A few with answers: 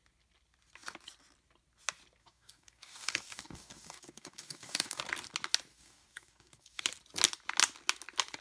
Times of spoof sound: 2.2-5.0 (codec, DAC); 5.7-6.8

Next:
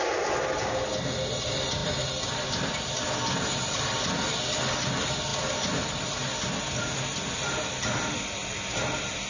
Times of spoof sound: none

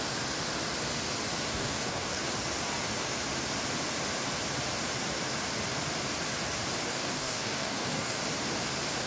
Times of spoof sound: 1.5-2.2 (codec, DAC); 6.9-8.2

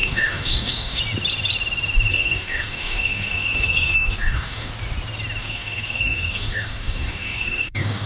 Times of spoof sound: 0.0-1.0 (codec, DAC); 2.1-4.7; 5.4-8.1

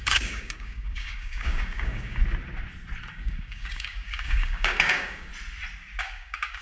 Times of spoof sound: 0.0-2.2 (codec, DAC); 3.1-5.3; 6.0-6.6

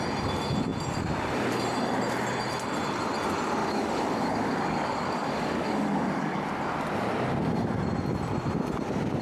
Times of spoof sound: 3.6-6.4 (codec, DAC)

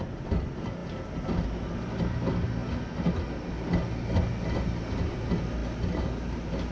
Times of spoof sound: none

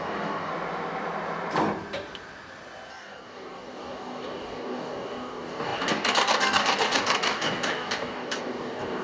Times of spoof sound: 0.0-0.5 (codec, DAC); 2.9-9.0